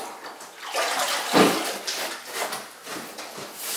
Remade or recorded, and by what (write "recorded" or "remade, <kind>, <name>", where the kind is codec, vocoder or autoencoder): recorded